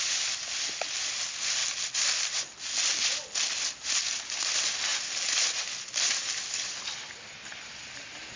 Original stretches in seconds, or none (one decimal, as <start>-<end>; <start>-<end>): 0.0-8.4